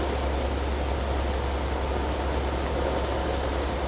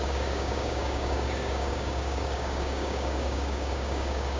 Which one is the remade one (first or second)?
second